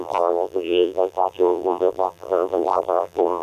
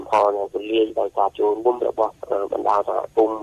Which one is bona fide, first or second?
second